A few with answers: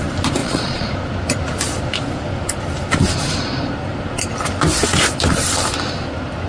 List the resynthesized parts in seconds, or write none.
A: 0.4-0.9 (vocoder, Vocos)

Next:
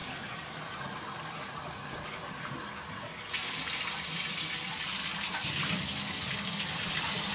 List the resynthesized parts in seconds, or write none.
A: none

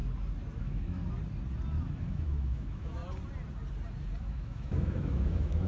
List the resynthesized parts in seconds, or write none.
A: 0.6-1.0 (autoencoder, DAC-VAE); 2.1-3.0; 4.2-5.7

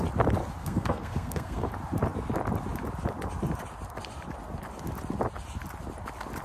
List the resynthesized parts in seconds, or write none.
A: 0.6-1.7 (codec, SNAC)

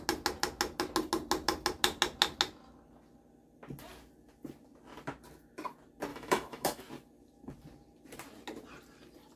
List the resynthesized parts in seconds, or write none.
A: 6.1-6.8 (autoencoder, DAC-VAE)